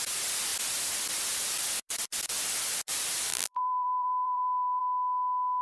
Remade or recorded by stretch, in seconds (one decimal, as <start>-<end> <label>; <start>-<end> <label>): 0.0-3.3 recorded; 3.3-4.8 remade; 4.8-5.6 recorded